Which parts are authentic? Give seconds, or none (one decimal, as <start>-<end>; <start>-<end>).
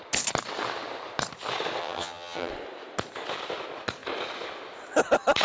0.0-1.8; 2.5-5.4